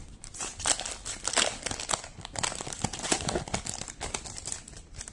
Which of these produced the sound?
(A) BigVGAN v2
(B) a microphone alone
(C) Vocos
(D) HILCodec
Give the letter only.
B